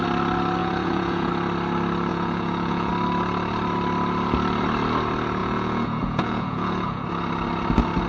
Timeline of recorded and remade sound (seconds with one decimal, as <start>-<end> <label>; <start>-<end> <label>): 0.0-0.6 recorded; 0.6-1.3 remade; 1.3-2.1 recorded; 2.1-2.9 remade; 2.9-5.4 recorded; 5.4-7.1 remade; 7.1-8.1 recorded